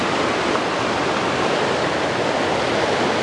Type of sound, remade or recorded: recorded